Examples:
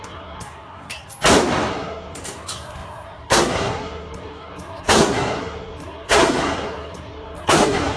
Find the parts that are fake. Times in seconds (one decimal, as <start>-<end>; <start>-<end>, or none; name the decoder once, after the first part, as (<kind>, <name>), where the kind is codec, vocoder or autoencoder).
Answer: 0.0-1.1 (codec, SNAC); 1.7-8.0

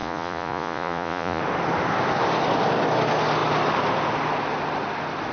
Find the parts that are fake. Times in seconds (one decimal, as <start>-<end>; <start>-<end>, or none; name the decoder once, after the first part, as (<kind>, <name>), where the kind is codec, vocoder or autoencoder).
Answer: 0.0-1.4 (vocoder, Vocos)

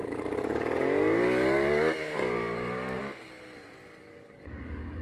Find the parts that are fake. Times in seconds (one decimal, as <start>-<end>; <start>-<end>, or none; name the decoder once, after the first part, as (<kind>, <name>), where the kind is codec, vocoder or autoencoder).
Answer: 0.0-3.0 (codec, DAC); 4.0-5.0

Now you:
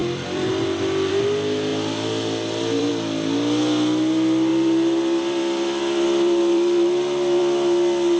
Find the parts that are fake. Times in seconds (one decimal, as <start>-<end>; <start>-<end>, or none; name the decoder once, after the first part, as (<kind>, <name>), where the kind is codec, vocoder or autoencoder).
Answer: 0.0-1.1 (vocoder, BigVGAN v2); 1.7-2.9; 4.5-7.4

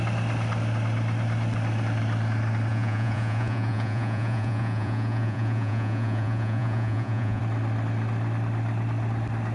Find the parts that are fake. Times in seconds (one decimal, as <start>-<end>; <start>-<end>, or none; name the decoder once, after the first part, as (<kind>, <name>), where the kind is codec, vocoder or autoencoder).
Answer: 2.7-7.4 (vocoder, Vocos)